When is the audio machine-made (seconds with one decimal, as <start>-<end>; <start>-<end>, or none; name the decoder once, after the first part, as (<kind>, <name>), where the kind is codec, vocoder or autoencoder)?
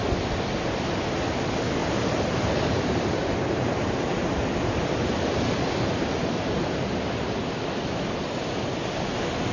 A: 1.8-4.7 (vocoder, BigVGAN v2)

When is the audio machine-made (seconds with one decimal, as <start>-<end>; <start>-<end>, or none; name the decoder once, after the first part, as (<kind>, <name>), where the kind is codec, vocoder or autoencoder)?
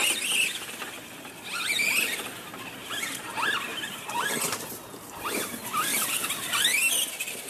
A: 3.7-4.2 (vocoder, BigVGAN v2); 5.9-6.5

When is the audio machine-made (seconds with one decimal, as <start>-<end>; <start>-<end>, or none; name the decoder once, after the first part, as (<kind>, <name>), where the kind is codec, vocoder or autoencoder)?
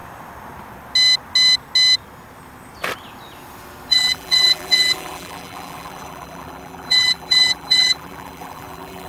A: 3.9-9.1 (vocoder, BigVGAN v2)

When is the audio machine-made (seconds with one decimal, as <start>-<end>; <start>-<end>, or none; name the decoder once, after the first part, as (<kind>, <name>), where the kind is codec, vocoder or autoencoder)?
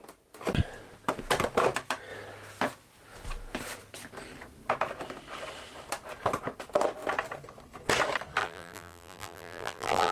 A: 8.4-10.1 (vocoder, BigVGAN v2)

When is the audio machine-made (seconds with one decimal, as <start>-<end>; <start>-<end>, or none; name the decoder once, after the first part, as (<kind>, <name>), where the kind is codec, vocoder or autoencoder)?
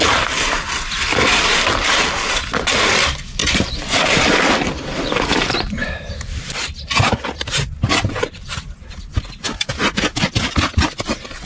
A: 3.4-8.6 (vocoder, BigVGAN v2)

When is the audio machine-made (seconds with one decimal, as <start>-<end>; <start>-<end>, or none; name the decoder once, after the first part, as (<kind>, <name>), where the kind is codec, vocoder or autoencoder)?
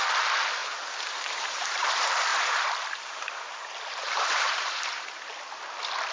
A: 0.6-1.9 (vocoder, BigVGAN v2); 2.3-5.2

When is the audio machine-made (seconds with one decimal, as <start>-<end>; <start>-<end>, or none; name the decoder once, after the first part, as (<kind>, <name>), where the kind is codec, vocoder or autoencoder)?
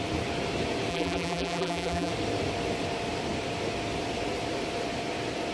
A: 0.9-2.1 (vocoder, BigVGAN v2)